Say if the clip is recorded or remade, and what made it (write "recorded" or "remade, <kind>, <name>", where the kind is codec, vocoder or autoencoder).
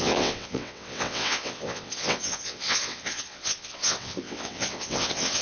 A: remade, vocoder, WaveNeXt